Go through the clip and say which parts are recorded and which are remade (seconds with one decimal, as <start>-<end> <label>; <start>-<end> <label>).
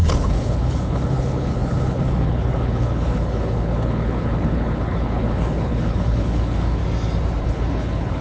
0.0-6.8 remade; 6.8-7.4 recorded; 7.4-8.2 remade